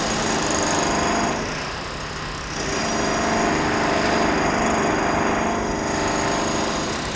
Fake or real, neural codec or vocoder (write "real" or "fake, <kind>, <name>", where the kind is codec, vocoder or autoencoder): real